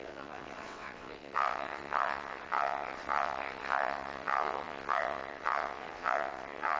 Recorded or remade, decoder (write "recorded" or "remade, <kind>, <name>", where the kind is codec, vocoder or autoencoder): remade, vocoder, WaveNeXt